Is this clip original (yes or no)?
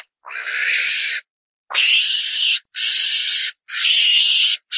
yes